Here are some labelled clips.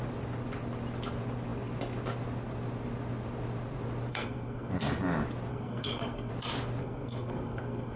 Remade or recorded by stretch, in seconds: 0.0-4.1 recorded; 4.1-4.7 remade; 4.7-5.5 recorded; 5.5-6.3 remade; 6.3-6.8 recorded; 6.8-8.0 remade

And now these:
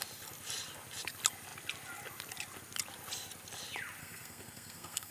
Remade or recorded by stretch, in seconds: 0.0-4.0 recorded; 4.0-5.1 remade

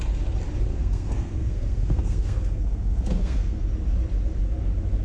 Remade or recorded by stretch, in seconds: 0.0-0.7 recorded; 0.7-3.7 remade; 3.7-5.0 recorded